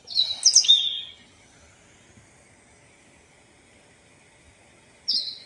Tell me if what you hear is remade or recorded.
recorded